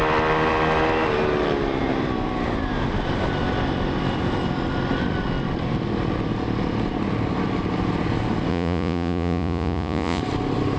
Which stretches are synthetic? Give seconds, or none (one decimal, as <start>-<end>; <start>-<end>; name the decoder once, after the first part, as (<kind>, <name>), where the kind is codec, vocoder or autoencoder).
8.5-10.2 (vocoder, Vocos)